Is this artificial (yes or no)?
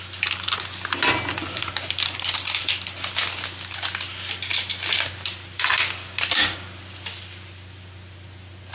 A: no